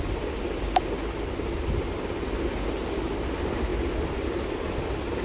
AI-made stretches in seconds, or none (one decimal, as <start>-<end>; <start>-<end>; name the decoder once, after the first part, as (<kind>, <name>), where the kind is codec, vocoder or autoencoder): none

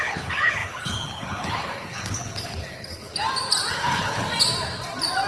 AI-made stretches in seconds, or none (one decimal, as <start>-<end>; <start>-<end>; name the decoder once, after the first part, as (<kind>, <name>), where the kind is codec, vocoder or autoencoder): 0.0-3.1 (codec, HILCodec); 3.7-4.2

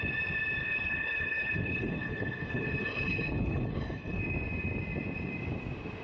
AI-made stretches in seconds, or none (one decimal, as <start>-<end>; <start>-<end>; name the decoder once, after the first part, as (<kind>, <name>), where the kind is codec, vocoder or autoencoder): 0.6-4.2 (codec, HILCodec)